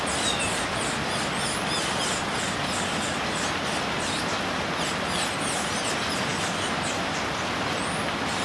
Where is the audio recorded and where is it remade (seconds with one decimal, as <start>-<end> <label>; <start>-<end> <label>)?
0.0-8.4 recorded